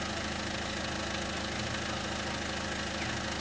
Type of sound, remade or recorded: recorded